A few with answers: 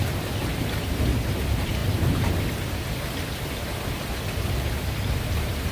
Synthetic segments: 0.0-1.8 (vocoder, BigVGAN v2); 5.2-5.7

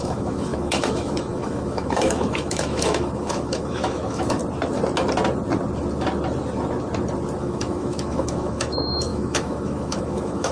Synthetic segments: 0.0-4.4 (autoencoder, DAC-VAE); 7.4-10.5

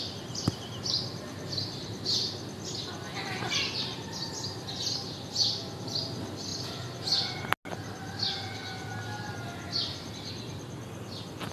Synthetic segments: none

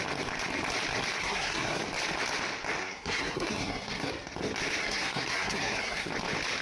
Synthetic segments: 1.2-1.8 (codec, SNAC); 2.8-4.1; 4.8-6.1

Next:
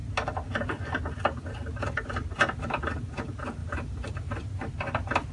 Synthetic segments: 3.6-4.7 (vocoder, BigVGAN v2)

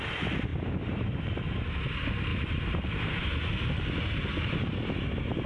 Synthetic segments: 0.5-1.4 (vocoder, BigVGAN v2); 2.3-3.2

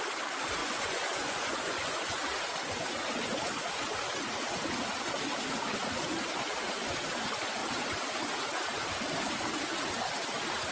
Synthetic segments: 0.6-2.2 (vocoder, Vocos)

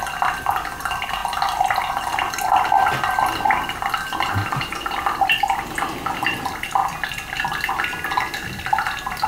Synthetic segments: 0.0-1.2 (vocoder, BigVGAN v2); 4.3-6.8; 7.7-9.3